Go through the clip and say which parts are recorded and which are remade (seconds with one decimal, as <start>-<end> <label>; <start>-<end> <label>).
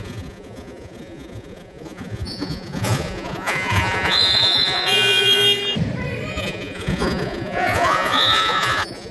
0.0-5.4 remade; 5.4-6.3 recorded; 6.3-9.1 remade